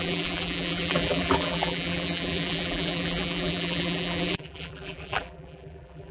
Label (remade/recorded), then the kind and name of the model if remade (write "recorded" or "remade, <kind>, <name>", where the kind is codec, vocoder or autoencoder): remade, vocoder, BigVGAN v2